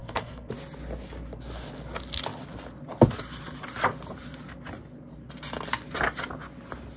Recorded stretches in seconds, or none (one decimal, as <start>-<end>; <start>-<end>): 0.5-7.0